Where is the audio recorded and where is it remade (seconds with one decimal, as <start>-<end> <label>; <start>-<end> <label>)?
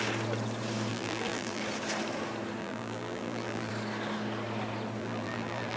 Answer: 0.0-0.9 recorded; 0.9-1.6 remade; 1.6-2.6 recorded; 2.6-3.7 remade; 3.7-5.0 recorded; 5.0-5.8 remade